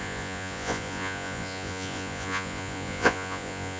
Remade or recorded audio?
remade